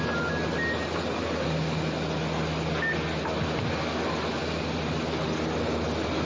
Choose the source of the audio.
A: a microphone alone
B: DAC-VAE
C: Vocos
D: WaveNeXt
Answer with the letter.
A